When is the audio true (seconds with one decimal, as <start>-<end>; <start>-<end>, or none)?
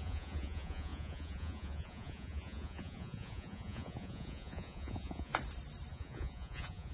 5.3-5.9